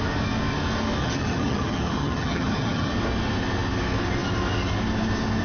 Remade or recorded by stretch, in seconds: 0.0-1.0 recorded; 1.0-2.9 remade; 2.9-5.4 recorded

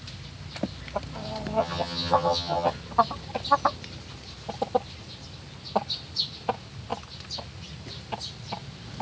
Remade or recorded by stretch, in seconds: 0.0-1.6 recorded; 1.6-2.7 remade; 2.7-9.0 recorded

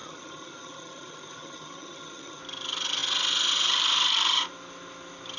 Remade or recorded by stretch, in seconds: 0.0-2.4 remade; 2.4-5.4 recorded

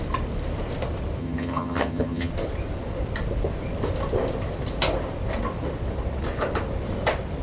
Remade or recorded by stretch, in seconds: 0.0-1.2 recorded; 1.2-2.3 remade; 2.3-7.4 recorded

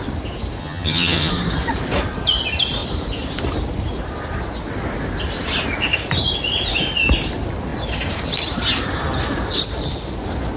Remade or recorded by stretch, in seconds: 0.0-0.6 recorded; 0.6-1.3 remade; 1.3-10.6 recorded